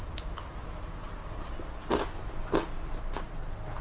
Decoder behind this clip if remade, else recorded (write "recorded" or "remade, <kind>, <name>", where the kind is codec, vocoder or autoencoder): recorded